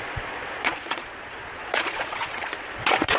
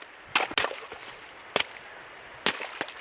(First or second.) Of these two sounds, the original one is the second